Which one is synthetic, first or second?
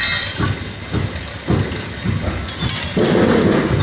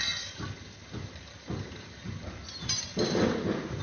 second